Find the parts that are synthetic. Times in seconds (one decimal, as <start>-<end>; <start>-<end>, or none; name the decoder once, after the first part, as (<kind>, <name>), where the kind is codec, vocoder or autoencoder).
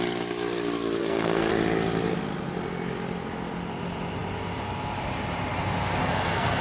1.0-1.5 (codec, SNAC); 6.0-6.6